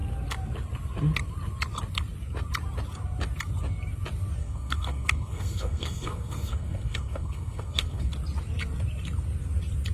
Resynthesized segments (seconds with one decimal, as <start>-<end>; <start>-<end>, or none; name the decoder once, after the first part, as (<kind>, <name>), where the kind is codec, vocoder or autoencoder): 4.4-8.1 (codec, SNAC)